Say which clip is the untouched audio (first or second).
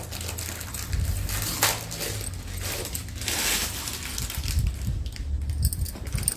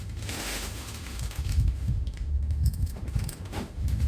first